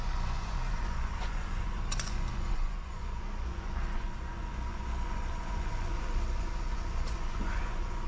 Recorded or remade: remade